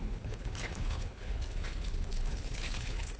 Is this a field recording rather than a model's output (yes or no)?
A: no